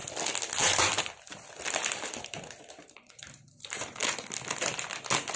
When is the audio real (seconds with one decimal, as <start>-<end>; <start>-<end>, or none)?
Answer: 0.0-2.2; 4.0-5.4